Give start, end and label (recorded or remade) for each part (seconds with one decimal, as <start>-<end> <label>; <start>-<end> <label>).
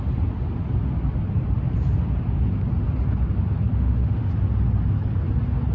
0.0-3.7 recorded; 3.7-4.3 remade; 4.3-5.7 recorded